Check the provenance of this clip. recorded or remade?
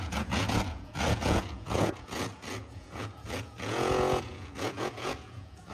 remade